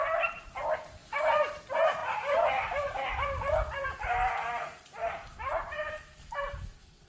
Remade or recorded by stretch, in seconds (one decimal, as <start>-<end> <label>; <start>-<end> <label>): 0.0-7.1 recorded